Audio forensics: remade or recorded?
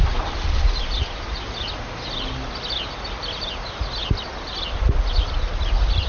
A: recorded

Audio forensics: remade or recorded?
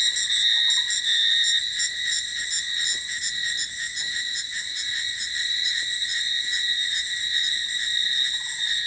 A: recorded